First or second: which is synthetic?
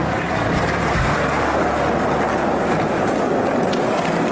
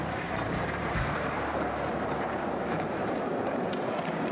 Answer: second